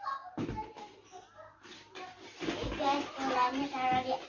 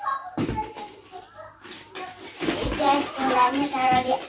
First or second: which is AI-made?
second